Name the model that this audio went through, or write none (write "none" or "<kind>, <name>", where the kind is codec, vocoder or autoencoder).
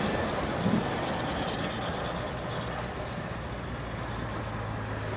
none